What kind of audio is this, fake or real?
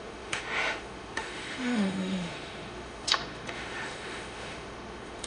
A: fake